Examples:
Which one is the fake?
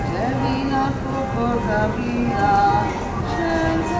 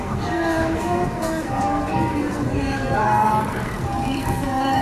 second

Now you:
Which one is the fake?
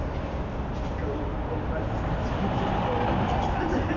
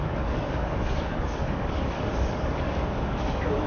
second